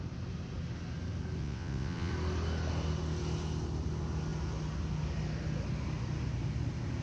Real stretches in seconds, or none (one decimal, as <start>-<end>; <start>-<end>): 0.0-1.4; 2.1-7.0